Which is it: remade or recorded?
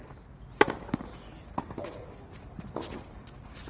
recorded